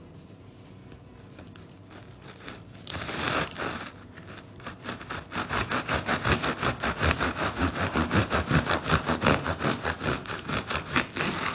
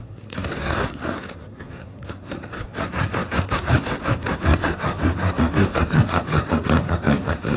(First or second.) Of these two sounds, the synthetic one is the second